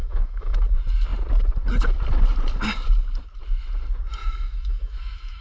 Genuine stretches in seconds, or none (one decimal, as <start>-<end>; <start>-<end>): 0.6-4.2